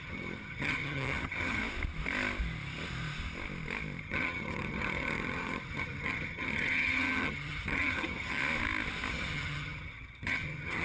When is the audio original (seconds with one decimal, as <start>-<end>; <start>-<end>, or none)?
1.6-4.0; 8.4-9.1

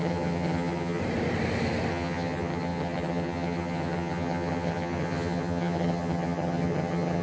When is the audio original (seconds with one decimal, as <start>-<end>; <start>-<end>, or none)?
1.0-1.9

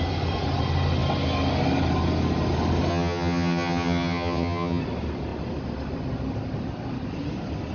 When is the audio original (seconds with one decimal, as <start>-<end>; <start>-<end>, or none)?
0.0-2.9; 4.8-7.7

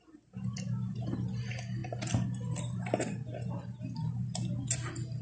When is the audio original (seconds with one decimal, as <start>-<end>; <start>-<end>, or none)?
0.0-5.2

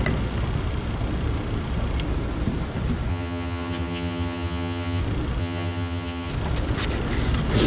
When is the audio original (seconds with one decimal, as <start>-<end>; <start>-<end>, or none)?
0.0-3.1; 5.0-5.4; 6.3-7.7

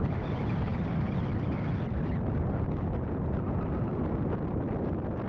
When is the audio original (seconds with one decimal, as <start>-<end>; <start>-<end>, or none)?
0.0-5.3